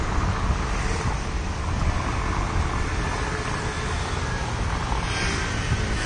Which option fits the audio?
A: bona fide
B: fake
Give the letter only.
A